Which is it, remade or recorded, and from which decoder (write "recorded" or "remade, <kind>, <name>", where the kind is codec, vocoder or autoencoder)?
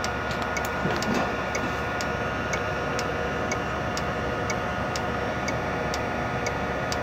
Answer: recorded